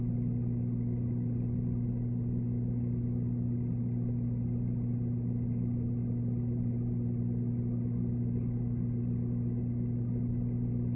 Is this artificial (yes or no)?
no